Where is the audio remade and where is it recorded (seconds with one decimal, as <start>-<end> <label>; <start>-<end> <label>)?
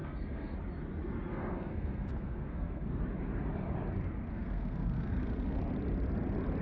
0.0-0.6 remade; 0.6-1.3 recorded; 1.3-3.0 remade; 3.0-4.3 recorded; 4.3-5.6 remade; 5.6-6.6 recorded